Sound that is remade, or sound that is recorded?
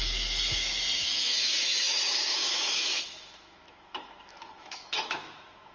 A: remade